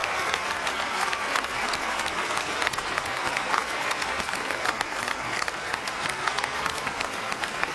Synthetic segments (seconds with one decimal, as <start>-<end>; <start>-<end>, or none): 0.0-7.7